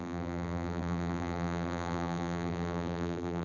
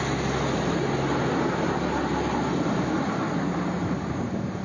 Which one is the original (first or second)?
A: second